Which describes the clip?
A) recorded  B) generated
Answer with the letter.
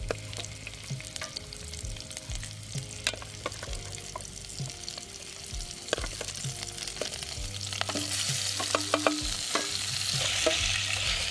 A